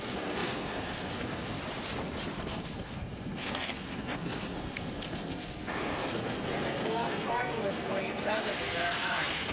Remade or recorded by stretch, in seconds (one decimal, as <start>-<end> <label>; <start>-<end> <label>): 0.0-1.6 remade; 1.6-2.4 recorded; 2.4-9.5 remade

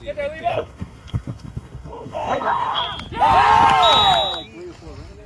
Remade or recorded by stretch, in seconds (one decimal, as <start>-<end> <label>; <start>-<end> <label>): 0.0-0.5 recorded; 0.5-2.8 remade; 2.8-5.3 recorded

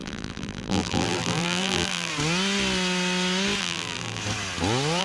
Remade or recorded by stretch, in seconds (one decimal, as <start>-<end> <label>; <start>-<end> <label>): 0.0-2.1 remade; 2.1-3.6 recorded; 3.6-4.2 remade; 4.2-5.0 recorded

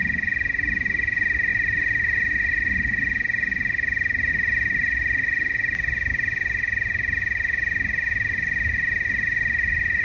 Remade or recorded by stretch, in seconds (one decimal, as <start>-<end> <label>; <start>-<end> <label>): 0.0-10.0 recorded

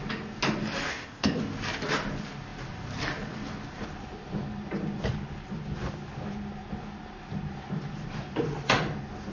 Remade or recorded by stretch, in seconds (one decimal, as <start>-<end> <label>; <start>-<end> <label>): 0.0-0.9 recorded; 0.9-1.4 remade; 1.4-9.3 recorded

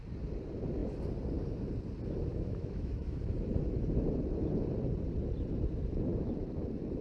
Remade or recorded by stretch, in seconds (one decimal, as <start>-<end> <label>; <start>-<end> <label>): 0.0-2.3 recorded; 2.3-3.2 remade; 3.2-7.0 recorded

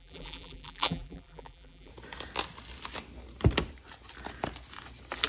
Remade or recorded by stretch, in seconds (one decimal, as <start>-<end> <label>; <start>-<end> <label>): 0.0-1.9 remade; 1.9-5.3 recorded